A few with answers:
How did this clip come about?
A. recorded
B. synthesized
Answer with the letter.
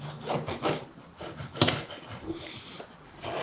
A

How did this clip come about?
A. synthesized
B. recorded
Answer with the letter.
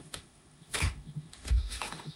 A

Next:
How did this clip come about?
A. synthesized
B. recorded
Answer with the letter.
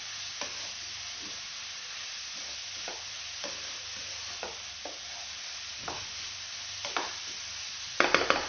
B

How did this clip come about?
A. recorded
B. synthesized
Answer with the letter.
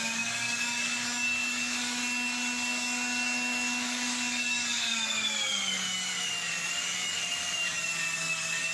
B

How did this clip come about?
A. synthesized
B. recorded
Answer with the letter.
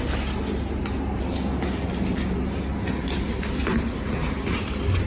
B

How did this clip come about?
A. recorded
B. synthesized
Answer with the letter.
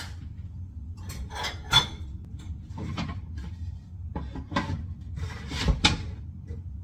A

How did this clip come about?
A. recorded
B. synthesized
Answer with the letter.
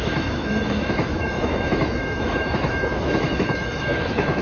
B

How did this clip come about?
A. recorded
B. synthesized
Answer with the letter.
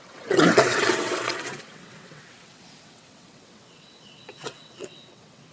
B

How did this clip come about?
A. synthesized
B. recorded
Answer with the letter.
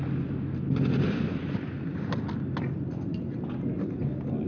B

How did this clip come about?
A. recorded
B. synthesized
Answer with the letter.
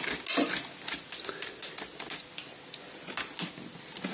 A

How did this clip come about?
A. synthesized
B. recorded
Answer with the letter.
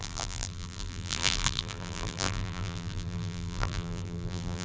A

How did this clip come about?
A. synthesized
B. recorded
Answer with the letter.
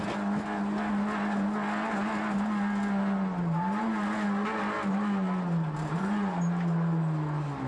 B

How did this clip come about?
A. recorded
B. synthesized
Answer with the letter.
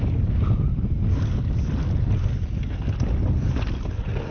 A